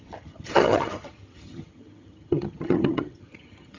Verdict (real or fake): fake